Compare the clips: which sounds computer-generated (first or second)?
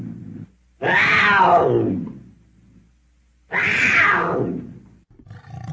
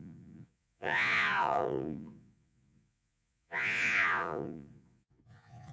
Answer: second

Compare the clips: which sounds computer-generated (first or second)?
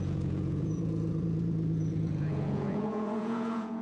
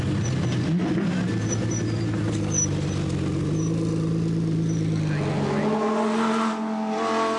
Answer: first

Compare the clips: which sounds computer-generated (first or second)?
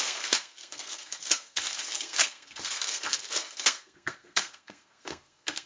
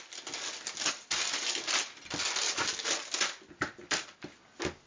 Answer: first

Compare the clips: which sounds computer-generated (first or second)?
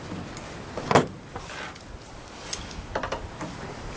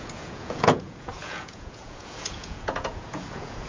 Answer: second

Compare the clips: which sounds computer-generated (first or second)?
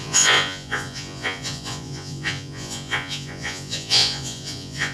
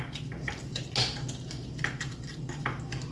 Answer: first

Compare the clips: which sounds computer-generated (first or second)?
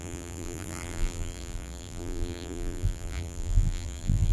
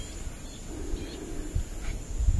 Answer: first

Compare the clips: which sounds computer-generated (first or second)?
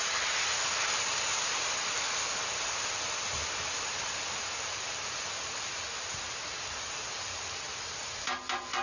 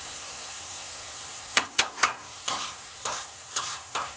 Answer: second